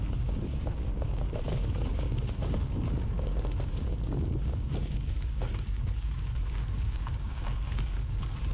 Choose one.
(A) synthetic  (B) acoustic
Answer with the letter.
A